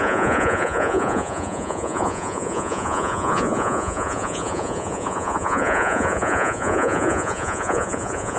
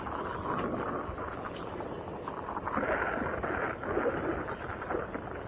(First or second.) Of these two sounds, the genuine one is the second